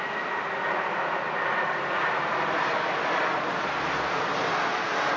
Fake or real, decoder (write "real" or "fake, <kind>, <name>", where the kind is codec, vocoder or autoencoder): real